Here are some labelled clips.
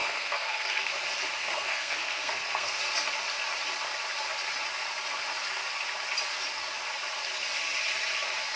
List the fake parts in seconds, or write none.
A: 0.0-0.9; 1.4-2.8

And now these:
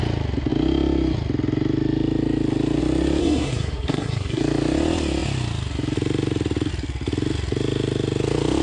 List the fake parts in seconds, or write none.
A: 3.2-4.4